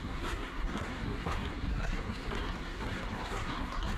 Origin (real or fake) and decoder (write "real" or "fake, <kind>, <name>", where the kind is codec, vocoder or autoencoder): fake, codec, SNAC